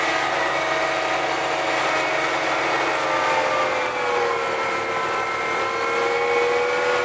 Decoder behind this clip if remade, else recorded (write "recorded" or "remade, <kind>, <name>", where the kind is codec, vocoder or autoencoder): recorded